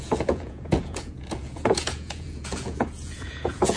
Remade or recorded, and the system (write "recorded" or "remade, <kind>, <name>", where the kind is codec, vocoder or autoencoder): remade, vocoder, Vocos